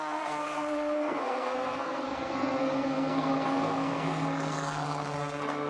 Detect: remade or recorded remade